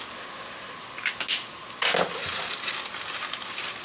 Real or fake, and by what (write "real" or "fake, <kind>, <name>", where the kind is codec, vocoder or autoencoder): real